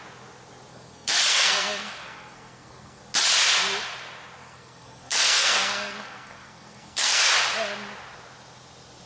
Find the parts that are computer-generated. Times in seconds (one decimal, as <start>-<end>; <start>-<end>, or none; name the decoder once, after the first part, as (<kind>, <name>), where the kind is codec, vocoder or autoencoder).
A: 0.7-3.0 (codec, SNAC); 4.4-7.3